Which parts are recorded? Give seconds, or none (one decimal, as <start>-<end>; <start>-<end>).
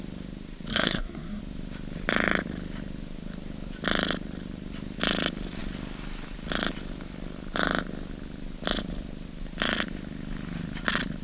0.0-0.7; 1.4-11.2